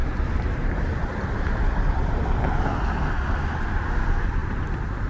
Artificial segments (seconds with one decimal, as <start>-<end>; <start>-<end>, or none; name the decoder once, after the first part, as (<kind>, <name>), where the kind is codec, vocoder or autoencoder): 0.0-3.1 (vocoder, BigVGAN v2)